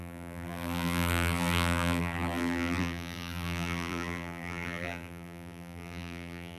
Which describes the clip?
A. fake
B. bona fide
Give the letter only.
A